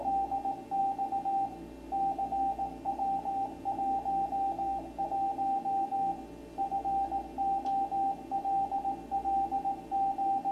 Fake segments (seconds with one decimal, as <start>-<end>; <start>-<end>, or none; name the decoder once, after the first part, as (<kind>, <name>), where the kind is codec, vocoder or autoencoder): none